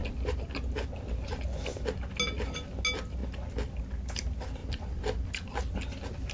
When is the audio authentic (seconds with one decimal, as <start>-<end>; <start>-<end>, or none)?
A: 0.5-4.6; 5.3-6.3